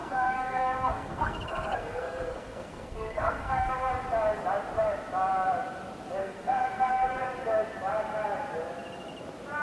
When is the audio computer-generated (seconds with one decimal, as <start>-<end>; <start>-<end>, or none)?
0.0-3.9; 6.2-7.1